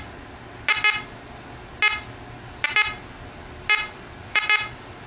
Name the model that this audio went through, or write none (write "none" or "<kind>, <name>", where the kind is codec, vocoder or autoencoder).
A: none